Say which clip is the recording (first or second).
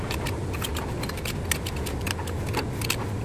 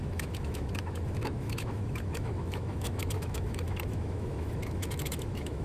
first